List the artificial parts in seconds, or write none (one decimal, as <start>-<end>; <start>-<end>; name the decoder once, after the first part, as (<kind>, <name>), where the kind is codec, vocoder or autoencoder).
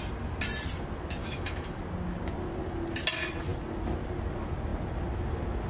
1.2-1.8 (autoencoder, DAC-VAE)